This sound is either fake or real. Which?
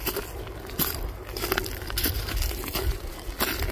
real